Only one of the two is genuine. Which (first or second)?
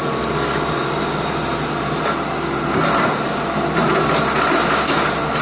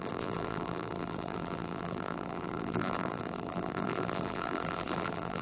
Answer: first